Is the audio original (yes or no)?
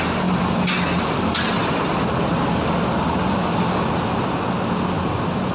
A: yes